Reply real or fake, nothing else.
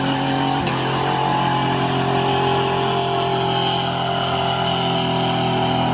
real